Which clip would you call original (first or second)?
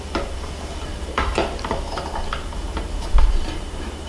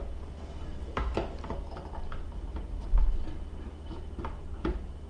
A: second